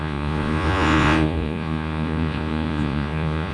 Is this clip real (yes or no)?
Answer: no